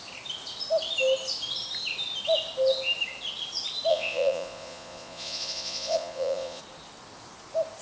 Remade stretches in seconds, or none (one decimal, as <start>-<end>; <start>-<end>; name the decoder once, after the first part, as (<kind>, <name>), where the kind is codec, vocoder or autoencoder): 3.9-6.6 (vocoder, Vocos)